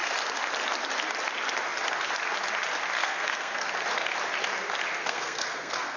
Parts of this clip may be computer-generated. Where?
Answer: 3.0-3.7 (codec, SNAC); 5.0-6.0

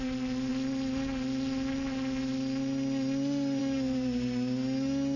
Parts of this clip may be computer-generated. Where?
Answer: none

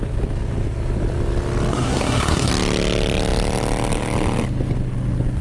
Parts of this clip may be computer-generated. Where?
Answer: 1.7-2.5 (codec, SNAC)

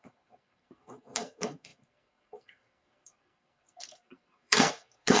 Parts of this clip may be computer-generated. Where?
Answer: 0.0-5.2 (codec, SNAC)

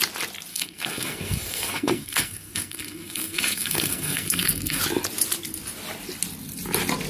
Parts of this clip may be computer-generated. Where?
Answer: 0.5-4.8 (codec, SNAC)